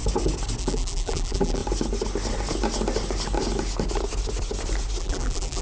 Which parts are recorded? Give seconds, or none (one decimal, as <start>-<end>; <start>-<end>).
0.0-0.6; 1.6-5.0